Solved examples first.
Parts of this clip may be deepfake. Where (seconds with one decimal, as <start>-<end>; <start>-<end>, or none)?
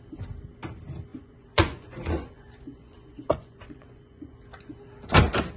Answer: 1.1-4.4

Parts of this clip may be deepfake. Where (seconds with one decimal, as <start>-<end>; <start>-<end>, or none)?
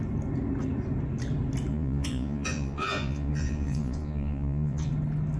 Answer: 1.7-4.9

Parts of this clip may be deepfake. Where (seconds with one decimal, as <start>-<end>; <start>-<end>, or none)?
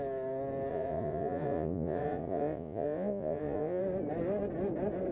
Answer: 0.7-3.8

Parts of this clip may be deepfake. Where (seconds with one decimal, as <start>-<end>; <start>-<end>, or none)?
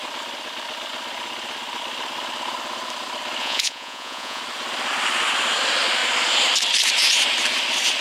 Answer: 3.4-4.4